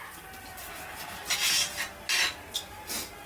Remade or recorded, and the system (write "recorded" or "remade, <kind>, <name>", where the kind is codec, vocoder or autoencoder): recorded